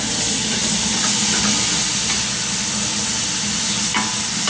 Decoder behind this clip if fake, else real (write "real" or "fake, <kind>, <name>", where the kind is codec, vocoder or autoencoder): real